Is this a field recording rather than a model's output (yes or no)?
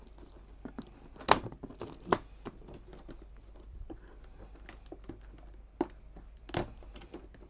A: yes